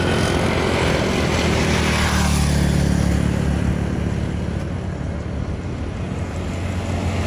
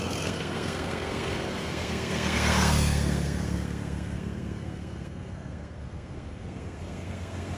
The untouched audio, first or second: first